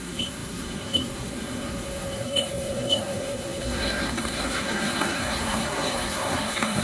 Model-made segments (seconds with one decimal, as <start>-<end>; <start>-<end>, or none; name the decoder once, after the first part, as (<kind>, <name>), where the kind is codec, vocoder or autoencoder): 0.0-6.8 (codec, SNAC)